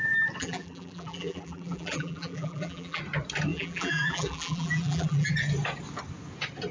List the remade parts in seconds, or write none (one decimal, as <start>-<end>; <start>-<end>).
0.4-3.0; 3.5-5.3